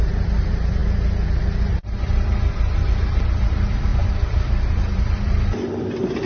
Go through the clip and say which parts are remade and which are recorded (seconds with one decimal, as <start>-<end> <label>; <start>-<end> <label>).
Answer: 0.0-0.8 remade; 0.8-1.7 recorded; 1.7-2.3 remade; 2.3-3.5 recorded; 3.5-6.3 remade